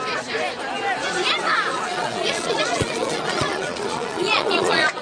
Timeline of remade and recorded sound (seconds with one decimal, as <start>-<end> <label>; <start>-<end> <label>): 0.0-1.7 recorded; 1.7-5.0 remade